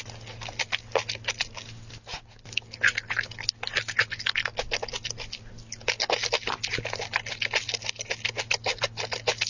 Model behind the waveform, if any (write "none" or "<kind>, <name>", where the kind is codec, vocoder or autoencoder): none